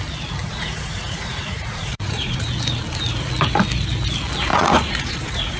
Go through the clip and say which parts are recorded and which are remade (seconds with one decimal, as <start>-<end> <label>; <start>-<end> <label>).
0.0-0.4 recorded; 0.4-2.5 remade; 2.5-4.5 recorded; 4.5-5.6 remade

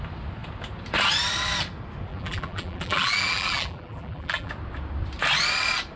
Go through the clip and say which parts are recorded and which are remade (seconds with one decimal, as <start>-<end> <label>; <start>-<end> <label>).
0.0-2.1 recorded; 2.1-4.5 remade; 4.5-6.0 recorded